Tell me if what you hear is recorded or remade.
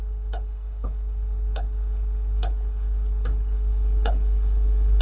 remade